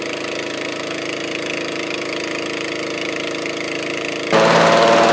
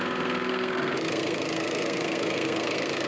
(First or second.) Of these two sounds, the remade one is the second